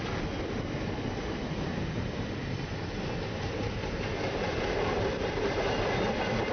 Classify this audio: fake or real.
real